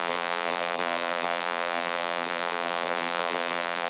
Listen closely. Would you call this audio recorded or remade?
remade